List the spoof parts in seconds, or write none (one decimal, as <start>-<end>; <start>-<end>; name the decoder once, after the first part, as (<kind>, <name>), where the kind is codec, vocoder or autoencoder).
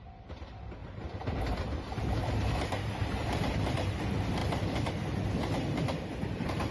0.8-2.3 (vocoder, BigVGAN v2); 3.0-3.5; 4.4-4.9